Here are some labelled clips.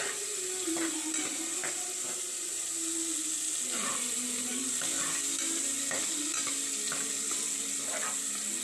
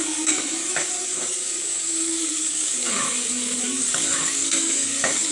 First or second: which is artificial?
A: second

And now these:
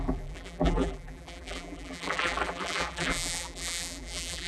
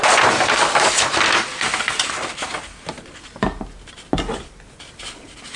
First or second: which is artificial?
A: first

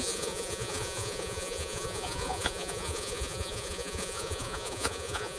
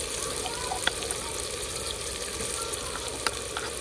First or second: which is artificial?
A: first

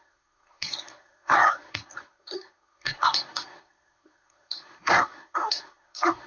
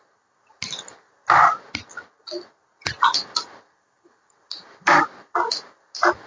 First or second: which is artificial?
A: first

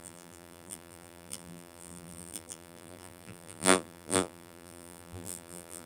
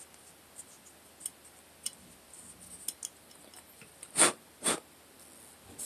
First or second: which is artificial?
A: first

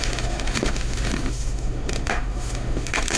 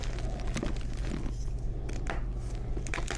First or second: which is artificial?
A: first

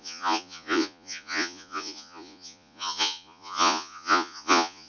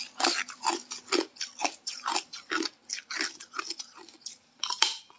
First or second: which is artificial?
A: first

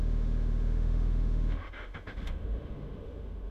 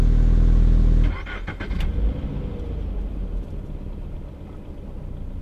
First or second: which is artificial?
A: first